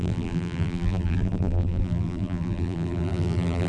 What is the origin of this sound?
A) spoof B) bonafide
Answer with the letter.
A